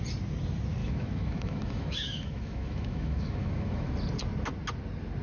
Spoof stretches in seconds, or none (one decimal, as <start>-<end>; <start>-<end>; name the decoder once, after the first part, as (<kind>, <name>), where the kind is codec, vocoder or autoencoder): 0.8-3.9 (autoencoder, DAC-VAE)